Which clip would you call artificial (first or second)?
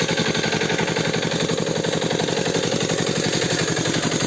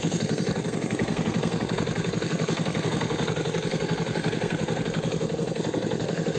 second